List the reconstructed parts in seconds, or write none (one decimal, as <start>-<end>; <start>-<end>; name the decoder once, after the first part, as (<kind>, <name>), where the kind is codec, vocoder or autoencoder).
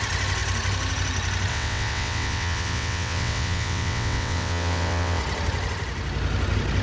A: 1.5-5.2 (vocoder, WaveNeXt)